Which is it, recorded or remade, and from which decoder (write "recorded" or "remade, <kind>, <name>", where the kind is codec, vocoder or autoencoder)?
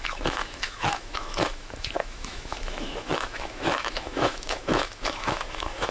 remade, autoencoder, DAC-VAE